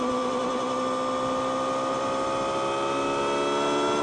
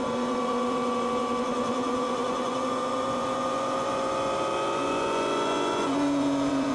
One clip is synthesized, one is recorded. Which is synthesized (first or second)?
second